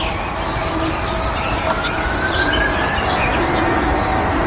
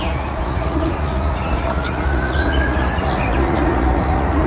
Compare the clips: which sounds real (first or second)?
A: first